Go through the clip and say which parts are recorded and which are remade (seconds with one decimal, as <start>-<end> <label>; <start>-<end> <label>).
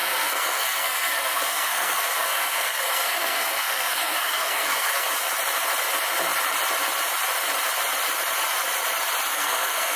0.0-5.1 remade; 5.1-9.3 recorded; 9.3-10.0 remade